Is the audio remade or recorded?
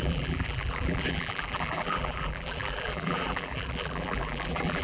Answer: remade